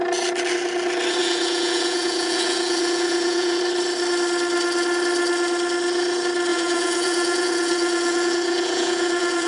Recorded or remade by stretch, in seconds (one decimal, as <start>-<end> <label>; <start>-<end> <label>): 0.0-1.2 recorded; 1.2-3.6 remade; 3.6-6.5 recorded; 6.5-9.5 remade